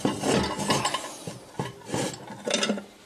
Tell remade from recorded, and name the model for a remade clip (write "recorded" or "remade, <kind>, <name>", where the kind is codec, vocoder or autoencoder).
recorded